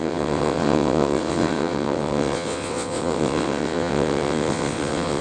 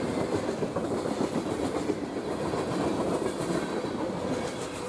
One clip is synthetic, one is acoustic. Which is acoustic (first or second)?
second